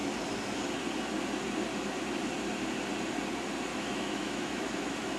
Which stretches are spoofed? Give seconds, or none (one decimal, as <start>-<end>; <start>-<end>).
3.7-5.2